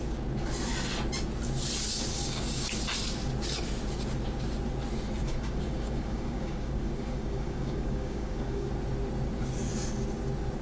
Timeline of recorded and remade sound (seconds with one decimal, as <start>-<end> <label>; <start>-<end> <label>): 0.0-2.1 recorded; 2.1-2.8 remade; 2.8-5.2 recorded; 5.2-8.7 remade; 8.7-10.6 recorded